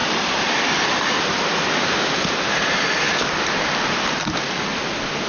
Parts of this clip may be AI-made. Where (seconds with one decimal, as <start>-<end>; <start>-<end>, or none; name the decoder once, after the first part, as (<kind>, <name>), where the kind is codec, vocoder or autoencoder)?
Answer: none